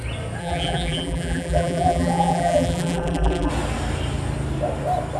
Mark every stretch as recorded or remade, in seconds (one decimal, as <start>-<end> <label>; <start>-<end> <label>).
0.0-0.4 recorded; 0.4-3.5 remade; 3.5-5.2 recorded